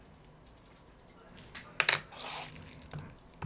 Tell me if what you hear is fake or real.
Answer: real